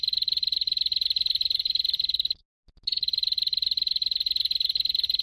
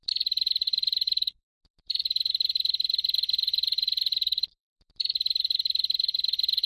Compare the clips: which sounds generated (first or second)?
second